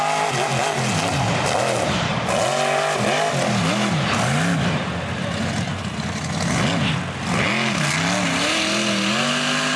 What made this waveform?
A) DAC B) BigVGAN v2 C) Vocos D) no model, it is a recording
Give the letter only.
D